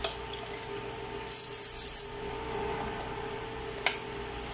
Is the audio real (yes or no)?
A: yes